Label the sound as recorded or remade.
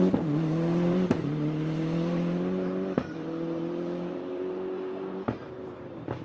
remade